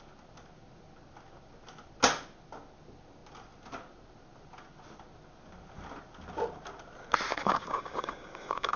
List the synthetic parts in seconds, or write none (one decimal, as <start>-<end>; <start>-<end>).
7.3-8.8